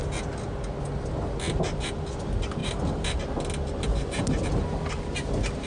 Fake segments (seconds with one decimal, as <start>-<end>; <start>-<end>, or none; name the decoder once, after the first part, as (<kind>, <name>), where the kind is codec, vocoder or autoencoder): none